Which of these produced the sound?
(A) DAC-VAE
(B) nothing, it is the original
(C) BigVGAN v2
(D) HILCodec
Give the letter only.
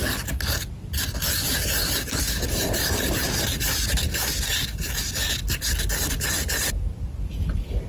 B